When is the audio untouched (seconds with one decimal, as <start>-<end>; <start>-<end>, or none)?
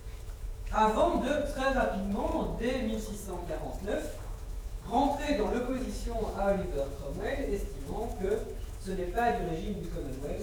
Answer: 2.3-3.9